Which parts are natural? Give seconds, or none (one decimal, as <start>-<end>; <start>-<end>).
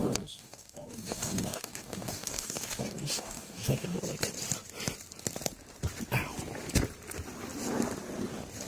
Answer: 4.0-8.7